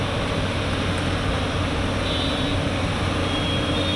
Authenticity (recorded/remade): recorded